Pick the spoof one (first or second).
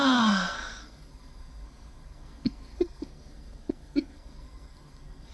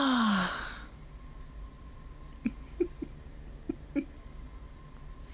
first